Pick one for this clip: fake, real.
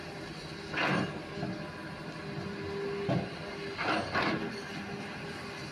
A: real